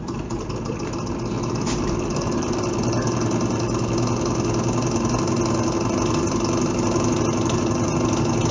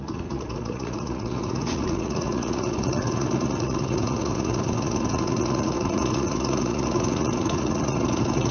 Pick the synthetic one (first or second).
second